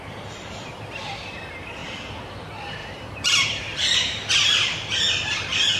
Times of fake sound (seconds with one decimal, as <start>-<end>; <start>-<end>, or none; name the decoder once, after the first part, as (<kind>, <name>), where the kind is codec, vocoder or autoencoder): 2.8-4.3 (vocoder, BigVGAN v2)